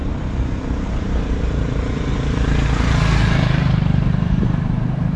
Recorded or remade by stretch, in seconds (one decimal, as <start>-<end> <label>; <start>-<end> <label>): 0.0-5.2 remade

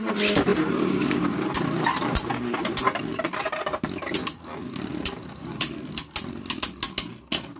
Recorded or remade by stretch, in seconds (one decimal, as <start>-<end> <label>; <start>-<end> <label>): 0.0-0.5 recorded; 0.5-3.0 remade; 3.0-4.9 recorded; 4.9-5.6 remade; 5.6-7.6 recorded

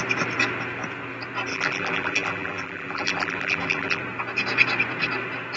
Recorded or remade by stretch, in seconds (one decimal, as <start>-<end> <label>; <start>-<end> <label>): 0.0-1.5 recorded; 1.5-4.0 remade; 4.0-5.6 recorded

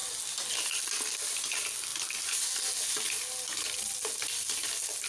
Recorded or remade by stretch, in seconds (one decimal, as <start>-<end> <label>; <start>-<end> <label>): 0.0-5.1 recorded

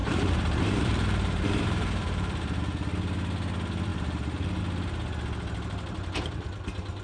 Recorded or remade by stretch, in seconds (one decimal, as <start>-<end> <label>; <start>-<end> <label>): 0.0-2.6 remade; 2.6-3.9 recorded; 3.9-4.6 remade; 4.6-7.0 recorded

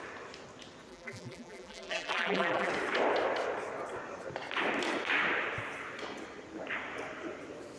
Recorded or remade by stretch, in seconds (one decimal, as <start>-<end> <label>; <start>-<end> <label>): 0.0-0.9 recorded; 0.9-2.7 remade; 2.7-7.8 recorded